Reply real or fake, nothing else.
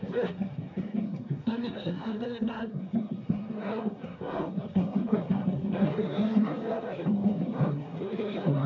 fake